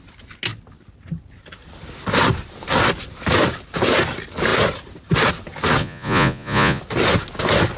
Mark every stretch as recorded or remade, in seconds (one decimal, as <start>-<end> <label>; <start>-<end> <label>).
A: 0.0-5.8 recorded; 5.8-6.8 remade; 6.8-7.8 recorded